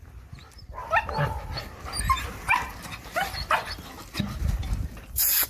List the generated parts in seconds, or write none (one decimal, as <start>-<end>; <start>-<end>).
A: 4.6-5.5